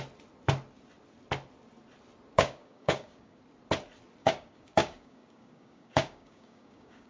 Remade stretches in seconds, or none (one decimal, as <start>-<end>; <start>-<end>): 2.3-3.4; 4.2-7.1

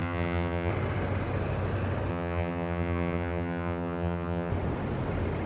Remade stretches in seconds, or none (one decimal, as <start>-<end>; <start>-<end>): 0.0-0.7; 2.1-4.5

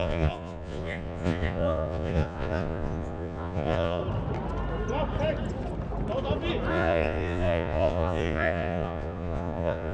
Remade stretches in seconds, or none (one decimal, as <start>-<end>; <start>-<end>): 0.0-4.0; 6.7-9.9

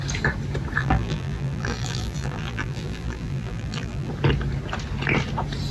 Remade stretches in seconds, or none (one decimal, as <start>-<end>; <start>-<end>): 0.8-4.1